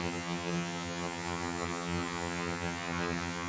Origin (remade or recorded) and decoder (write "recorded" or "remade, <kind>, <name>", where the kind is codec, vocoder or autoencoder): remade, vocoder, HiFi-GAN